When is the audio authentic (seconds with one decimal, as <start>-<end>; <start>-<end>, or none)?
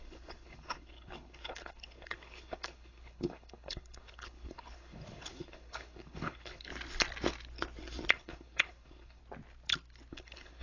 6.7-8.1; 9.2-10.1